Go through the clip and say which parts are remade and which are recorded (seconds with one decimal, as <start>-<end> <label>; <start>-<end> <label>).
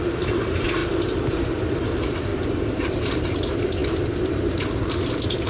0.0-0.8 remade; 0.8-1.3 recorded; 1.3-5.5 remade